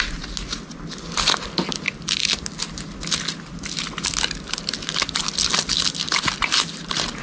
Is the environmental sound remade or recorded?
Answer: recorded